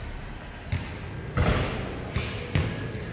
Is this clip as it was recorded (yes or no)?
yes